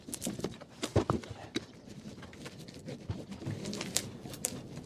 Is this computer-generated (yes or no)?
no